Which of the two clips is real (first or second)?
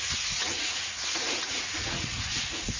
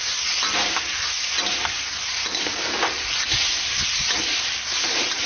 second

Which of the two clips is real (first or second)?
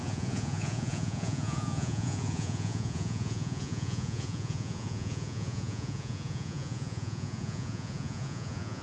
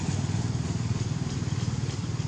second